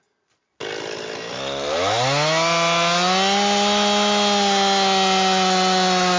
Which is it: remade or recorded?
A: recorded